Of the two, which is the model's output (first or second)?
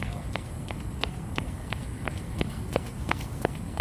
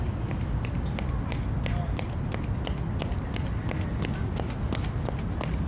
first